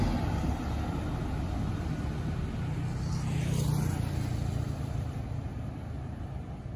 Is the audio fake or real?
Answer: real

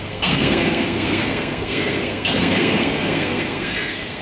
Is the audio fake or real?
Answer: fake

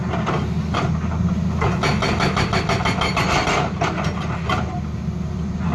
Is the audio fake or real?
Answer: real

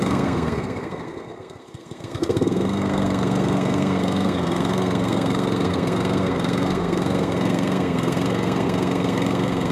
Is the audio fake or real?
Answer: fake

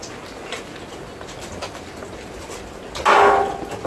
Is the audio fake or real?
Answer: real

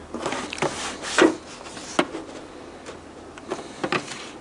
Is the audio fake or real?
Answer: real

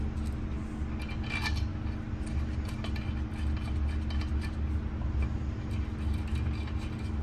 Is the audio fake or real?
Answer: real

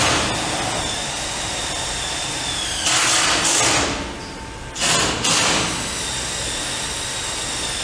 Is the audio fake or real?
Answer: real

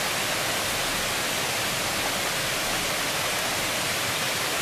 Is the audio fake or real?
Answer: real